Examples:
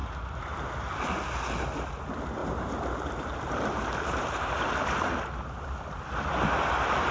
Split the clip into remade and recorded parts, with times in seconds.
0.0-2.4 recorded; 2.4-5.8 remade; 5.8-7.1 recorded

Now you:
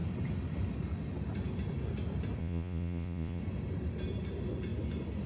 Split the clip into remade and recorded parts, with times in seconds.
0.0-2.4 recorded; 2.4-3.4 remade; 3.4-5.3 recorded